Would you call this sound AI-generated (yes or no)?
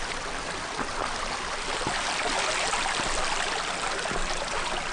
no